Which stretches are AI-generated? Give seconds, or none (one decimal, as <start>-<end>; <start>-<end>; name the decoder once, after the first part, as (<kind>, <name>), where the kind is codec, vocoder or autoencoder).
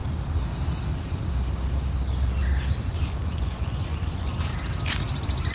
2.9-4.5 (vocoder, Vocos)